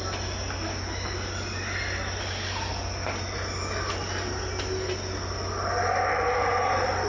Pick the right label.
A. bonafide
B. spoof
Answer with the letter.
A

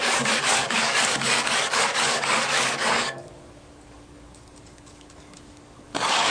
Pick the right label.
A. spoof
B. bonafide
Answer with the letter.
A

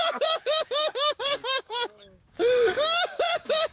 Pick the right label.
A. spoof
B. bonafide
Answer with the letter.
A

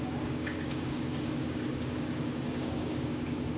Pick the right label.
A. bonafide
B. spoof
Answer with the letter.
B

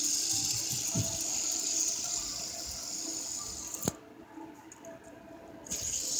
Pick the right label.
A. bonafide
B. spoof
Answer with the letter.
A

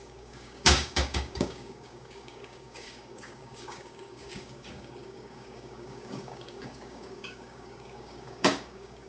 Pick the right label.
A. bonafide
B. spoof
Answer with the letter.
B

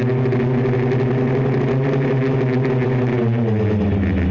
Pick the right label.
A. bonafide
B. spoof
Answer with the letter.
A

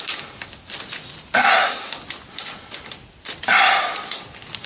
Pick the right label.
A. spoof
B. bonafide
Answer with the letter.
B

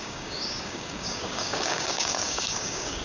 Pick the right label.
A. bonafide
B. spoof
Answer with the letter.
B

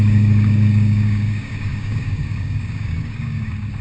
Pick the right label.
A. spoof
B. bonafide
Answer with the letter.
A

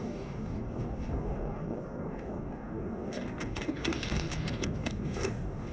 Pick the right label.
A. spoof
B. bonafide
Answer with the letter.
A